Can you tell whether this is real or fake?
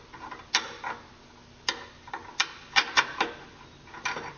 real